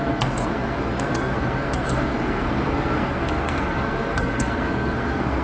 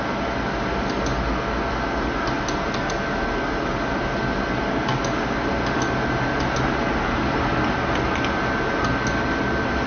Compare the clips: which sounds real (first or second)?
second